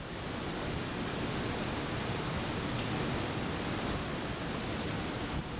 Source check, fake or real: real